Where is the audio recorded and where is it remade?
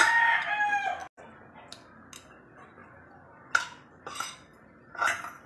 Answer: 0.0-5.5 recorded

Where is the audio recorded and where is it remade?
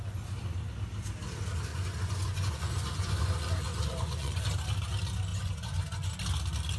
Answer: 0.0-1.7 recorded; 1.7-4.4 remade; 4.4-5.3 recorded; 5.3-6.1 remade; 6.1-6.8 recorded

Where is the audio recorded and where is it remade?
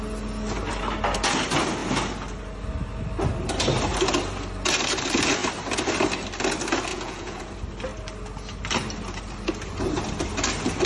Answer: 0.0-6.9 recorded; 6.9-7.5 remade; 7.5-10.9 recorded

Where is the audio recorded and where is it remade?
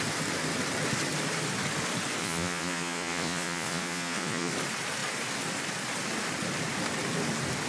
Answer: 0.0-2.2 recorded; 2.2-4.5 remade; 4.5-7.7 recorded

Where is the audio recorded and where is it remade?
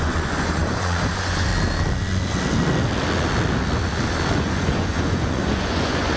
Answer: 0.0-1.5 remade; 1.5-4.4 recorded; 4.4-6.2 remade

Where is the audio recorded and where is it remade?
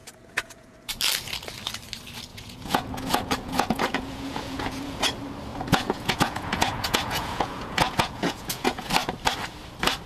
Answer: 0.0-0.9 remade; 0.9-2.3 recorded; 2.3-5.0 remade; 5.0-5.5 recorded; 5.5-8.9 remade; 8.9-10.1 recorded